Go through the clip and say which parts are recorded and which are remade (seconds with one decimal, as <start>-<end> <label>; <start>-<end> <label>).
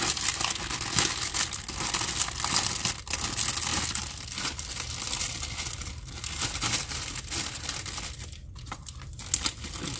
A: 0.0-10.0 recorded